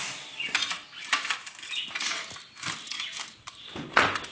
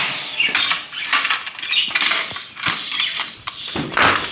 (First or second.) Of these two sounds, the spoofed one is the second